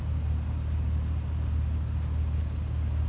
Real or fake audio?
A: real